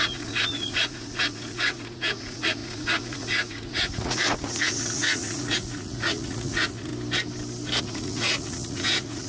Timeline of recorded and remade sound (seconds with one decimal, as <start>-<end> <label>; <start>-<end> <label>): 0.0-6.9 remade; 6.9-7.8 recorded; 7.8-9.3 remade